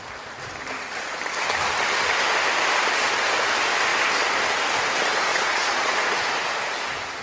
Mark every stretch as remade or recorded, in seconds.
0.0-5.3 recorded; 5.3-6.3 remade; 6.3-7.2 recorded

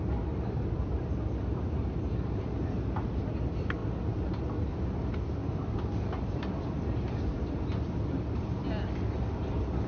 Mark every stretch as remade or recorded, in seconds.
0.0-9.9 recorded

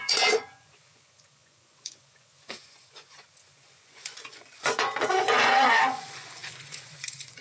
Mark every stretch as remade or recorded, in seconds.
0.0-7.4 remade

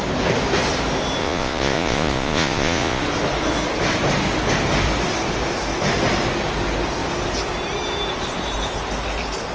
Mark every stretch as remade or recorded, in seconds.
0.0-1.2 recorded; 1.2-3.0 remade; 3.0-9.5 recorded

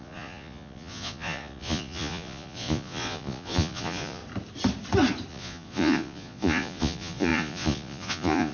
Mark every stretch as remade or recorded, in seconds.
0.0-4.2 remade; 4.2-5.3 recorded; 5.3-8.5 remade

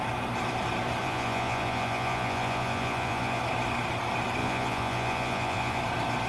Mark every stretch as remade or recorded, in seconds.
0.0-1.0 recorded; 1.0-3.4 remade; 3.4-4.4 recorded; 4.4-5.8 remade; 5.8-6.3 recorded

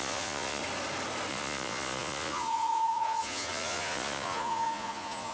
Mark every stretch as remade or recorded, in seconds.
0.0-0.6 remade; 0.6-1.3 recorded; 1.3-5.3 remade